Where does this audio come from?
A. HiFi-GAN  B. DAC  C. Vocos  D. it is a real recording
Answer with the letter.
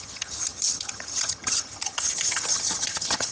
A